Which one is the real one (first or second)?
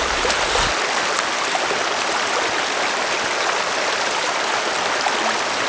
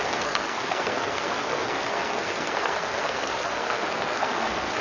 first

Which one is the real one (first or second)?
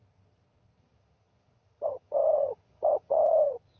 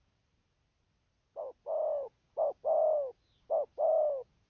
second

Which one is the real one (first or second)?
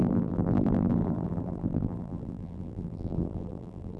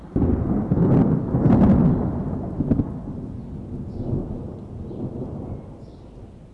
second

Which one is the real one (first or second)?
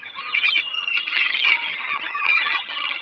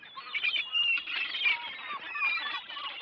second